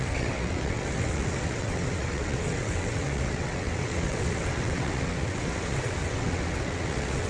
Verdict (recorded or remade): remade